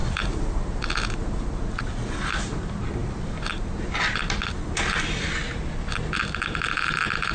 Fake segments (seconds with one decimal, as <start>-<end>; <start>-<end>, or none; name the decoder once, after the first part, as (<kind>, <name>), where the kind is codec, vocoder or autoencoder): none

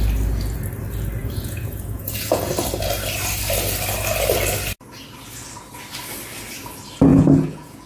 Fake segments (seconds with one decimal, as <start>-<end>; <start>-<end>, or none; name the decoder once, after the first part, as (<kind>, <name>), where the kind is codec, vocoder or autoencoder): 1.2-2.5 (vocoder, Vocos); 7.1-7.9

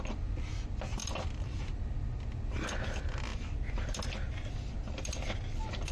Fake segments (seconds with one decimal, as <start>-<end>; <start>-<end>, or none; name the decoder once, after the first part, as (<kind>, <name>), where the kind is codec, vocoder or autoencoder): none

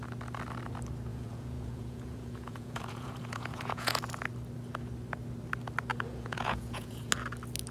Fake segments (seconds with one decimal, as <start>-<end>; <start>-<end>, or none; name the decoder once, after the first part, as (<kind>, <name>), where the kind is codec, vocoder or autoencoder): 1.1-3.9 (vocoder, Vocos); 5.9-7.1

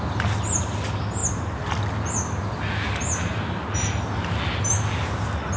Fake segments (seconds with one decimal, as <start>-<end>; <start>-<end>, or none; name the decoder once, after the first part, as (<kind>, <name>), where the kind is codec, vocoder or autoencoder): none

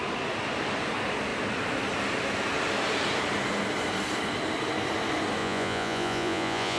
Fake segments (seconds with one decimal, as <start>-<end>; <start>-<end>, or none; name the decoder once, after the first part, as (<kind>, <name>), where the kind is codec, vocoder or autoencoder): 5.4-6.8 (vocoder, Vocos)

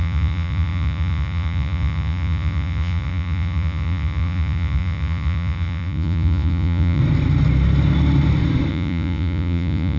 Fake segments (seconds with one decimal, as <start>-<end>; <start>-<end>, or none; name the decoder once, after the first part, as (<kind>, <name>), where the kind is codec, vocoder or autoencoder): 0.0-7.0 (vocoder, Vocos); 8.7-10.0